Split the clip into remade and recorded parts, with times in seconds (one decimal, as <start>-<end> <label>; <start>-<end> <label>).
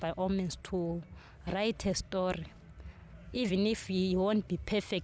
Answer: 0.0-3.0 recorded; 3.0-3.5 remade; 3.5-5.0 recorded